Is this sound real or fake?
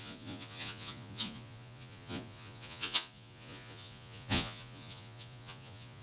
fake